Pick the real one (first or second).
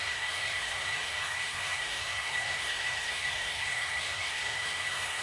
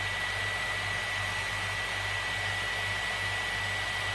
second